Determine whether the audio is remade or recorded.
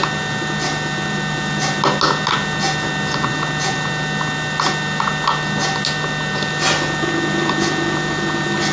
recorded